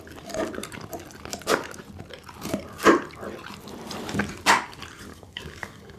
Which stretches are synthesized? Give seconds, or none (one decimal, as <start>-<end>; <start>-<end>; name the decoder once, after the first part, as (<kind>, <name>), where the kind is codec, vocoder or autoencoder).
5.1-6.0 (codec, DAC)